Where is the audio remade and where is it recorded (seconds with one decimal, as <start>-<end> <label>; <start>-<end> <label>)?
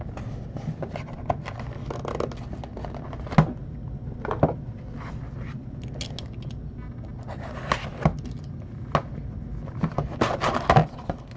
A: 0.0-11.4 recorded